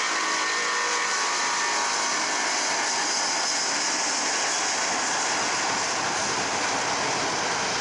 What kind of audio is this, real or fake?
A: real